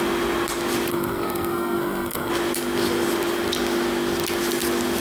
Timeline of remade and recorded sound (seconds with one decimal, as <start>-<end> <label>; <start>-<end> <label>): 0.0-0.9 recorded; 0.9-2.3 remade; 2.3-5.0 recorded